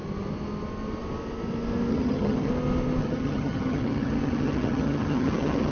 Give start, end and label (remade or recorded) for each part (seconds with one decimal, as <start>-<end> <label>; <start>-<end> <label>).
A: 0.0-1.9 recorded; 1.9-2.5 remade; 2.5-3.0 recorded; 3.0-5.7 remade